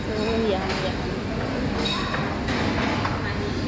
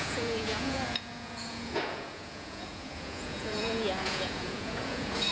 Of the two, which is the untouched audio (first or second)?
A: first